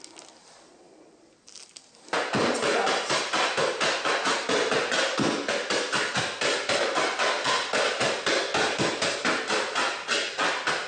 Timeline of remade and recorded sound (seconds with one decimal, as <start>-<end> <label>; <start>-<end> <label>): 0.0-10.9 recorded